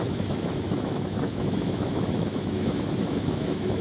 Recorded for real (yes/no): no